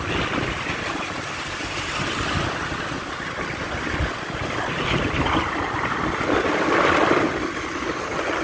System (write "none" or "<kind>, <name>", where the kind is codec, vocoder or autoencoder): none